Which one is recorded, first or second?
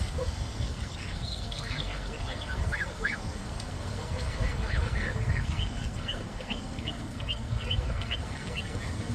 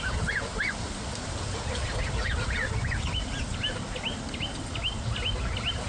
second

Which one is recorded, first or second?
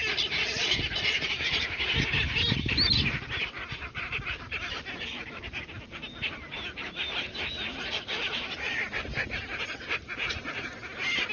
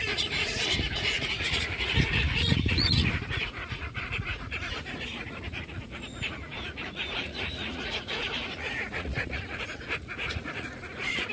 first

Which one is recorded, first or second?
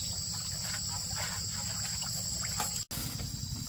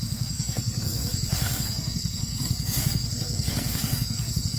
first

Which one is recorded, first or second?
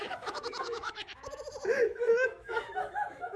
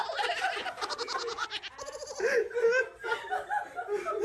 second